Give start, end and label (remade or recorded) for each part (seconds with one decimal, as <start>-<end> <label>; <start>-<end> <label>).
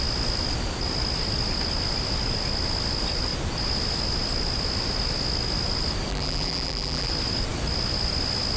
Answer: 0.0-6.1 recorded; 6.1-7.1 remade; 7.1-8.6 recorded